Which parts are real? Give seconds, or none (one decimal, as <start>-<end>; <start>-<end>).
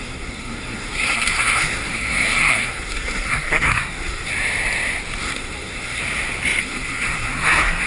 4.3-5.2; 6.0-6.6